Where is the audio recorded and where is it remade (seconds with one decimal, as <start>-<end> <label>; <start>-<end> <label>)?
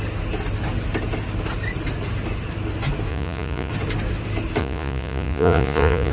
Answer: 0.0-3.1 recorded; 3.1-3.7 remade; 3.7-4.6 recorded; 4.6-6.1 remade